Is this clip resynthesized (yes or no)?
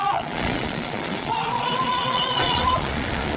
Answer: yes